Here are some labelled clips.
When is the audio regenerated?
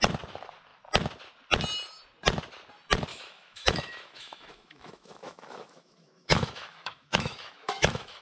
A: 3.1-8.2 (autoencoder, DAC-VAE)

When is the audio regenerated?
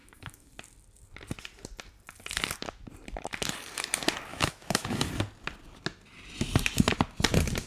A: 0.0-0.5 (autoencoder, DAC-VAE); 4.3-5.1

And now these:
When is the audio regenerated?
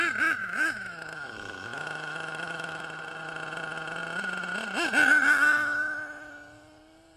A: 0.4-2.8 (autoencoder, DAC-VAE)